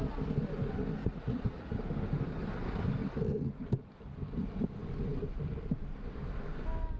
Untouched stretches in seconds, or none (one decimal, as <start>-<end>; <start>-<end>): 0.0-1.0; 1.7-7.0